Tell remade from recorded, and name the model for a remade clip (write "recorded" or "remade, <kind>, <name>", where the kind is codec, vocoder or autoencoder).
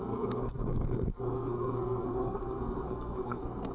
remade, codec, SNAC